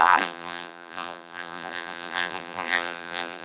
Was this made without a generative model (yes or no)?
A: no